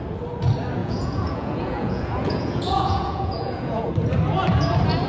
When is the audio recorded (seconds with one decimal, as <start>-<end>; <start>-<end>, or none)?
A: 0.0-0.8; 3.9-5.1